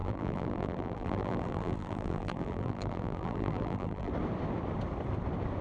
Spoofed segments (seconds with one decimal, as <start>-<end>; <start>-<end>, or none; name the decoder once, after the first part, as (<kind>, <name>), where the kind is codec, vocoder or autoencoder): 0.0-4.1 (vocoder, BigVGAN v2)